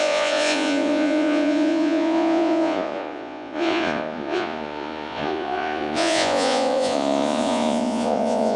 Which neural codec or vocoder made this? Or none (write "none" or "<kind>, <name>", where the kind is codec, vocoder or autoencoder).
vocoder, Vocos